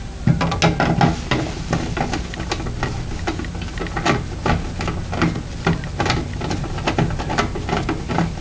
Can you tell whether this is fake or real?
real